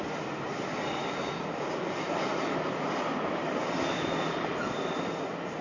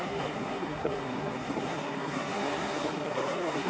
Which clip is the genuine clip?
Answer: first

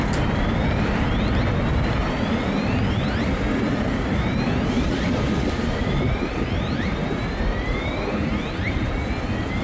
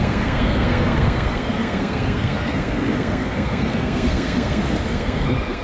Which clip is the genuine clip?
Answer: first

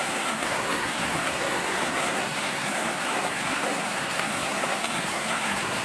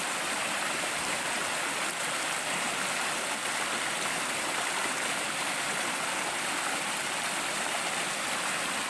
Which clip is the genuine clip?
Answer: second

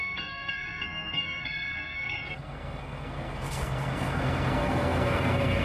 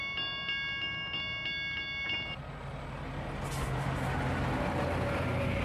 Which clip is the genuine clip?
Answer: second